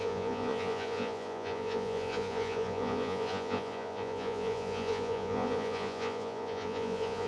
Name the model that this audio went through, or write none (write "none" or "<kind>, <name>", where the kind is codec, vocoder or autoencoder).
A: vocoder, Vocos